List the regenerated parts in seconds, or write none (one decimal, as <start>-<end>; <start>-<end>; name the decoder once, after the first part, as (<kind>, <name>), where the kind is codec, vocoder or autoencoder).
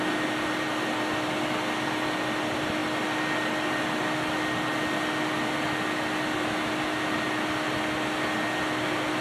none